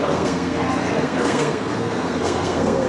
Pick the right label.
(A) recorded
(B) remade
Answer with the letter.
B